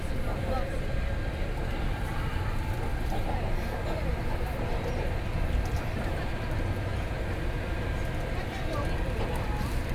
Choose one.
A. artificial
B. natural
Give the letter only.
B